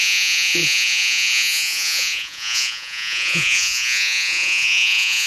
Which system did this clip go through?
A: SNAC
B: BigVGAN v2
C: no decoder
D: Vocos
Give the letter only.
D